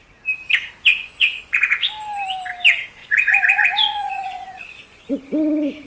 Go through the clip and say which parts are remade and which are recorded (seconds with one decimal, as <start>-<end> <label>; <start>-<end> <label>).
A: 0.0-0.9 recorded; 0.9-1.9 remade; 1.9-3.0 recorded; 3.0-5.2 remade; 5.2-5.9 recorded